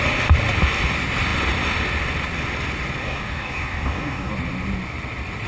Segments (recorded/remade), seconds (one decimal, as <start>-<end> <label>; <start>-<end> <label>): 0.0-3.0 recorded; 3.0-4.3 remade; 4.3-5.5 recorded